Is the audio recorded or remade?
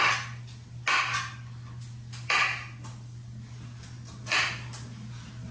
recorded